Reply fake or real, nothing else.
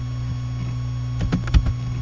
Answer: real